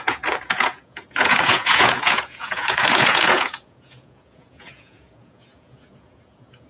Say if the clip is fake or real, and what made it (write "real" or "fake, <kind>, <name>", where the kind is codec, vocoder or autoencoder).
fake, vocoder, Vocos